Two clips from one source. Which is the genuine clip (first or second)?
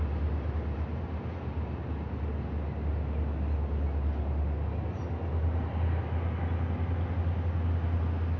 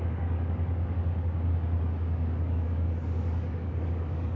first